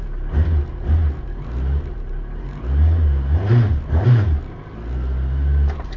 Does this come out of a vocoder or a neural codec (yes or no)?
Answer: no